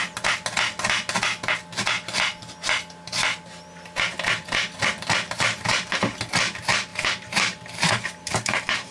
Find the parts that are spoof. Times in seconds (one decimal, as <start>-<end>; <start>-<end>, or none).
6.9-8.9